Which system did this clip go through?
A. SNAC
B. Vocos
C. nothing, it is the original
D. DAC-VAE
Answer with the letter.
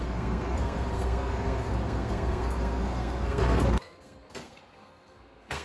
A